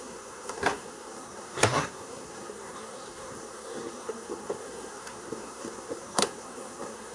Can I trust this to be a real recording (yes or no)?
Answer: no